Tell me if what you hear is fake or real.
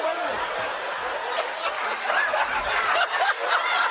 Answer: fake